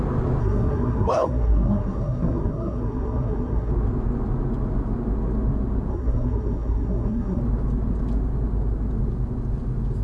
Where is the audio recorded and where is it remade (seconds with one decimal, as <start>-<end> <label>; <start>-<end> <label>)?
0.0-0.4 recorded; 0.4-3.7 remade; 3.7-5.9 recorded; 5.9-7.4 remade; 7.4-10.0 recorded